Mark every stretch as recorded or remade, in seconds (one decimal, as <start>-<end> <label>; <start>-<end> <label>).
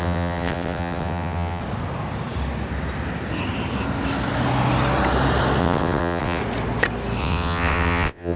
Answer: 0.0-1.6 remade; 1.6-5.6 recorded; 5.6-6.4 remade; 6.4-7.2 recorded; 7.2-8.4 remade